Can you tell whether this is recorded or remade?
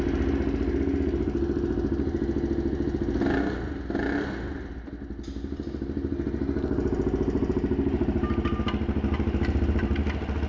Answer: recorded